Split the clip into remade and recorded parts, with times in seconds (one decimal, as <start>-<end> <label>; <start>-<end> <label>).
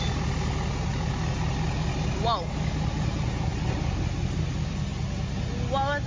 0.0-6.1 recorded